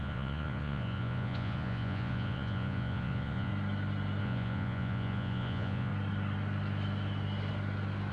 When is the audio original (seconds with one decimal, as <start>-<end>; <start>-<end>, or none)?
3.5-4.2; 5.9-8.1